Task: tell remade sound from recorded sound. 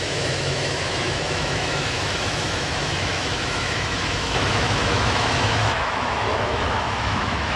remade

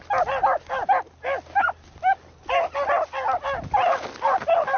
recorded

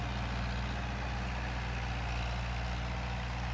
recorded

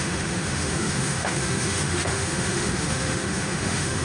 remade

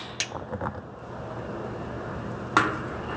recorded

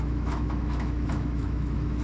remade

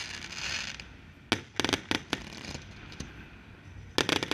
recorded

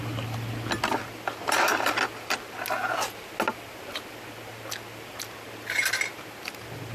recorded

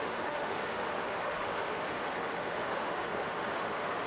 remade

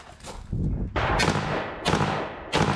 recorded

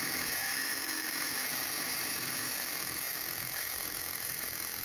remade